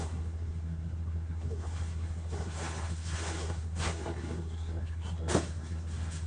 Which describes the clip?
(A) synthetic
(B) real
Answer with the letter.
A